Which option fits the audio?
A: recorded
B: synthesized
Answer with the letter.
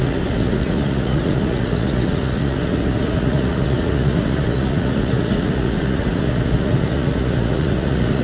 B